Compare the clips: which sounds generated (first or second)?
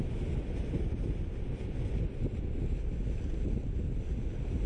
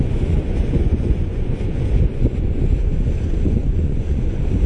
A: second